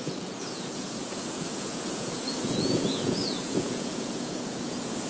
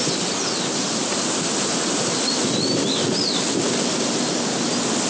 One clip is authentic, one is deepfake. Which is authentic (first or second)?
second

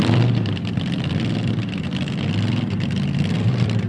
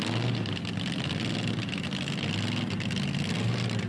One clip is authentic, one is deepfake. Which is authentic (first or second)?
second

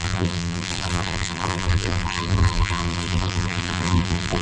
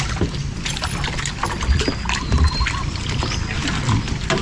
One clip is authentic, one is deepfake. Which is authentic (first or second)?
second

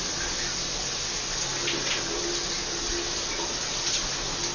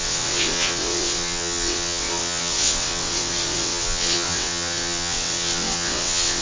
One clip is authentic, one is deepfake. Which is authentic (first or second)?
first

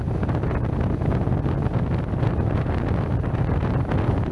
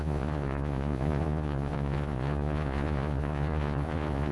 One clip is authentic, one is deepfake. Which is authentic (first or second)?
first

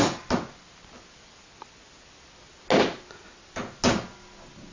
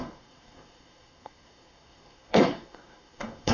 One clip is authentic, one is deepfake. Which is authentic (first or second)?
first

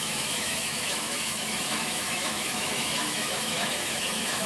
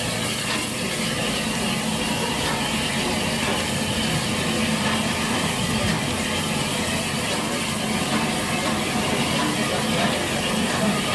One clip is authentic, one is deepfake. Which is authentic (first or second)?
second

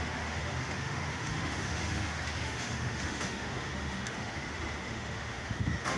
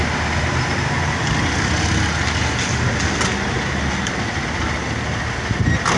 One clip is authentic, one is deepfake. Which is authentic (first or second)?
second